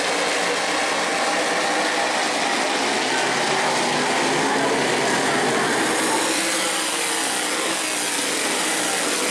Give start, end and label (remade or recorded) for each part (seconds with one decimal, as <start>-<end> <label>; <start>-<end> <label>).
0.0-9.3 recorded